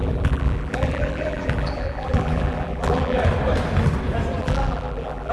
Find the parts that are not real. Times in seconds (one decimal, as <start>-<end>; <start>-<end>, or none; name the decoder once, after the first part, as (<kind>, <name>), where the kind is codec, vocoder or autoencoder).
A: 0.0-3.2 (vocoder, BigVGAN v2); 4.4-5.3